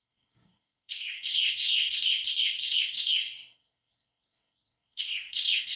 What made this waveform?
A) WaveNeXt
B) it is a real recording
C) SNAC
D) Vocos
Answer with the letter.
C